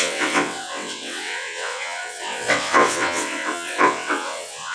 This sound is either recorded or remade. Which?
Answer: remade